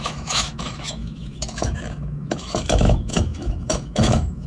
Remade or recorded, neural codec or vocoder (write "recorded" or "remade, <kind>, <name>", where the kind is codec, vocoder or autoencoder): remade, autoencoder, DAC-VAE